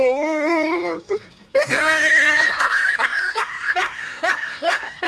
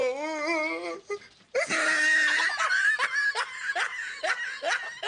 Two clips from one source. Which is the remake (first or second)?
first